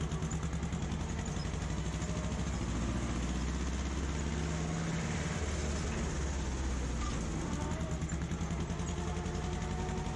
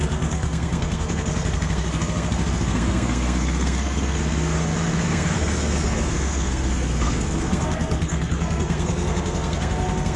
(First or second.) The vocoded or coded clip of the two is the second